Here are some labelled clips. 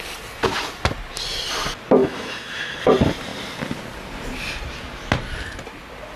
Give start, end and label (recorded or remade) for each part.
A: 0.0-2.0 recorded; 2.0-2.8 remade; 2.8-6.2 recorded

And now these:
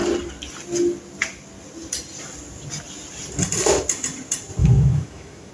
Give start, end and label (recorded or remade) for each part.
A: 0.0-4.6 recorded; 4.6-5.5 remade

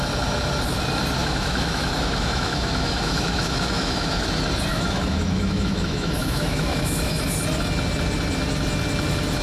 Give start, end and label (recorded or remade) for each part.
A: 0.0-1.2 recorded; 1.2-4.2 remade; 4.2-4.7 recorded; 4.7-7.2 remade; 7.2-9.4 recorded

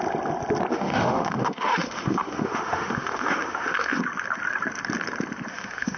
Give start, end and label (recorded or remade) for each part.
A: 0.0-0.7 recorded; 0.7-4.0 remade; 4.0-5.5 recorded; 5.5-6.0 remade

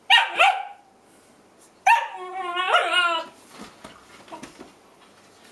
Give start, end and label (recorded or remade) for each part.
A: 0.0-5.5 recorded